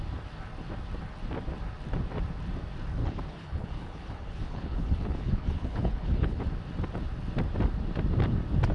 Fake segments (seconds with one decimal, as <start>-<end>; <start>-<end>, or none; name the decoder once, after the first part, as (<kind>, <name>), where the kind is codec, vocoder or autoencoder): 3.0-6.4 (codec, HILCodec)